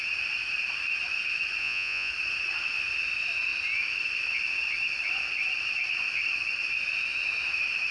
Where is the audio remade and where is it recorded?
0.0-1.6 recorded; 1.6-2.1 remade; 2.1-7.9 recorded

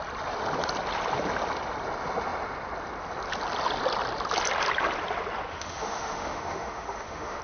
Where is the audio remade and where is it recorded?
0.0-5.5 recorded; 5.5-7.4 remade

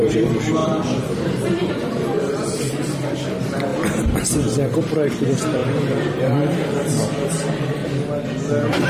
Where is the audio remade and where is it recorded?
0.0-7.8 remade; 7.8-8.9 recorded

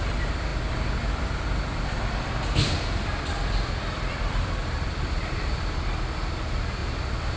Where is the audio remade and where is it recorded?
0.0-6.8 remade; 6.8-7.4 recorded

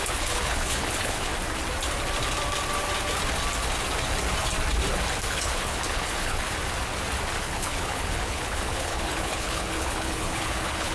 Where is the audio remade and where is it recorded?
0.0-1.3 remade; 1.3-5.3 recorded; 5.3-6.6 remade; 6.6-7.4 recorded; 7.4-10.9 remade

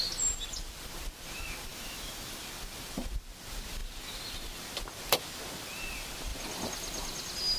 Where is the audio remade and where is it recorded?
0.0-1.7 recorded; 1.7-2.3 remade; 2.3-7.6 recorded

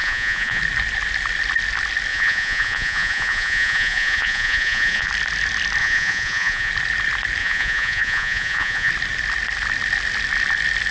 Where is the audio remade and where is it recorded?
0.0-0.6 remade; 0.6-2.1 recorded; 2.1-5.1 remade; 5.1-5.8 recorded; 5.8-6.7 remade; 6.7-7.4 recorded; 7.4-8.9 remade; 8.9-10.9 recorded